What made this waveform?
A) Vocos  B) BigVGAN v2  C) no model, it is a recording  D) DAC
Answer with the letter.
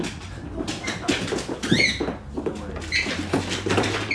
C